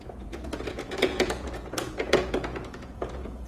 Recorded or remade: remade